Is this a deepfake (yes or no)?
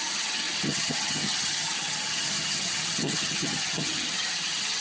yes